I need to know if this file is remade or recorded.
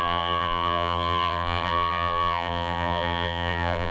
remade